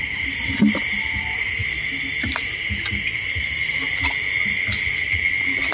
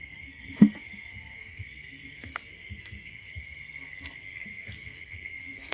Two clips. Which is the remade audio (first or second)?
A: second